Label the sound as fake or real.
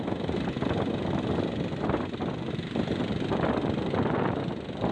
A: real